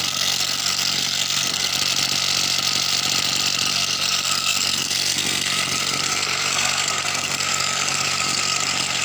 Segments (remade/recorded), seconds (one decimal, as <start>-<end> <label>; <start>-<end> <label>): 0.0-1.7 remade; 1.7-3.7 recorded; 3.7-9.0 remade